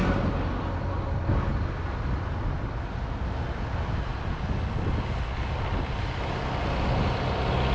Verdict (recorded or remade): recorded